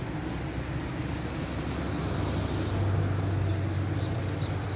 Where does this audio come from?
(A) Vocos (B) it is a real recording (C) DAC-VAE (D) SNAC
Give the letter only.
B